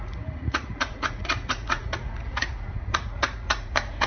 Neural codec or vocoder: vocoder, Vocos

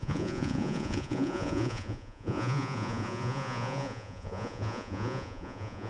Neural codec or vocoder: vocoder, Vocos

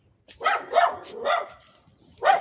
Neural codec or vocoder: none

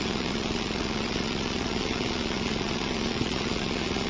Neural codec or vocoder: vocoder, Vocos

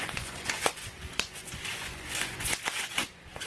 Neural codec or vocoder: vocoder, Vocos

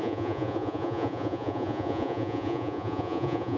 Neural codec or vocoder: vocoder, Vocos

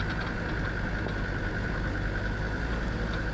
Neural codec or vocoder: none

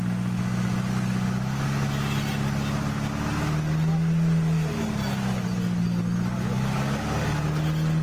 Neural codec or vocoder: none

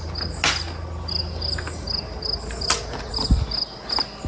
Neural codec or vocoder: none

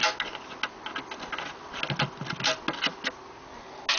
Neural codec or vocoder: none